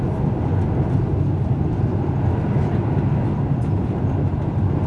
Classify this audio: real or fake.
real